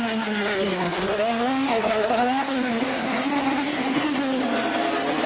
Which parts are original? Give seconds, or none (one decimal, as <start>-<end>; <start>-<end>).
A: 4.4-5.3